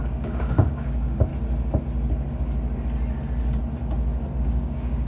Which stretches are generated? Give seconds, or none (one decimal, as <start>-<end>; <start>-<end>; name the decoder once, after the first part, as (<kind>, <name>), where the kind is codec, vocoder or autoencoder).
0.0-1.3 (codec, DAC); 4.4-5.1